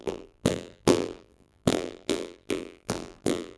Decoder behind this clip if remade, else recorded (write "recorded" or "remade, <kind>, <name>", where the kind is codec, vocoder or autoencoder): remade, vocoder, BigVGAN v2